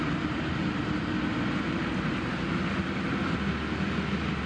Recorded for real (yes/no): yes